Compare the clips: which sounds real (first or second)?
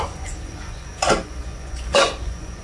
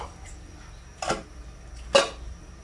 second